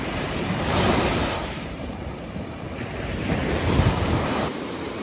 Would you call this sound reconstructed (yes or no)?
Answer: yes